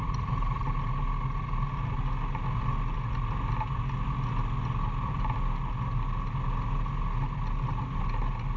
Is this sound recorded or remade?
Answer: recorded